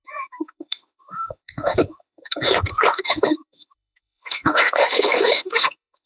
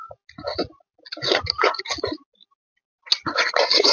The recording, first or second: second